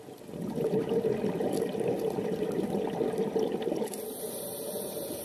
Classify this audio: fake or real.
real